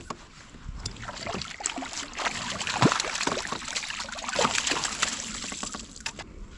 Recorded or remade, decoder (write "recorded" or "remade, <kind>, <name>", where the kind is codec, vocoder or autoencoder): recorded